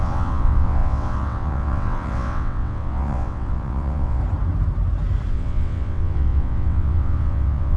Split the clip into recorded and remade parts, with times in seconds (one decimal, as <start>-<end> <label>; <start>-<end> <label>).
0.0-4.2 remade; 4.2-5.3 recorded; 5.3-7.8 remade